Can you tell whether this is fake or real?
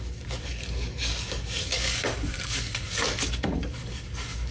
fake